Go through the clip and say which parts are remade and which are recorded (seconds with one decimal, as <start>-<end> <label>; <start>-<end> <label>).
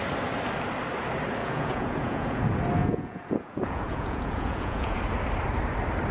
0.0-1.4 recorded; 1.4-2.4 remade; 2.4-2.8 recorded; 2.8-5.0 remade; 5.0-6.1 recorded